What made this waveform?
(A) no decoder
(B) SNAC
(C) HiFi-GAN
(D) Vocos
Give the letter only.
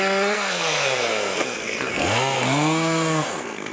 B